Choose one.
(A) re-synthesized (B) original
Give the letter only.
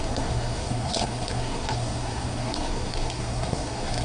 A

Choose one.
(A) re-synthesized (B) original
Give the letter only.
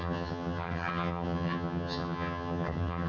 A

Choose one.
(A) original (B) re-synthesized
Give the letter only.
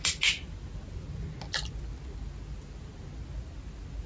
A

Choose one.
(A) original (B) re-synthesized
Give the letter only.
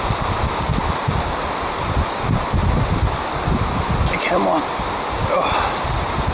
A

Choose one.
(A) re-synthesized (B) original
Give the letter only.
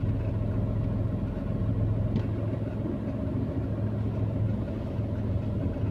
B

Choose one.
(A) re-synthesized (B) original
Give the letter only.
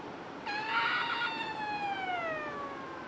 B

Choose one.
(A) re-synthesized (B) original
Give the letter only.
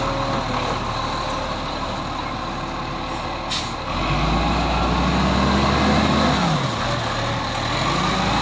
B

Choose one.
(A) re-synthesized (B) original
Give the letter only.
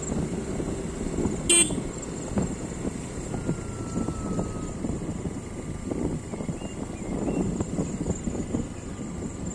B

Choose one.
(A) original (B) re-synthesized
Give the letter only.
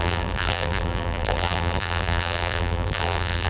B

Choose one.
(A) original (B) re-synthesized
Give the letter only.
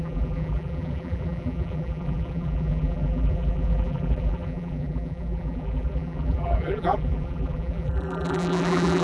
B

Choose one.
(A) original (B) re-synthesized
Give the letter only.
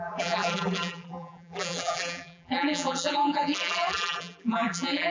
B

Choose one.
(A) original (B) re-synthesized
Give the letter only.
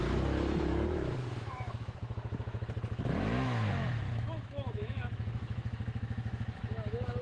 B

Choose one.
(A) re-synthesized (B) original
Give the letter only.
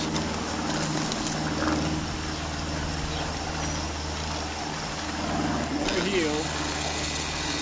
B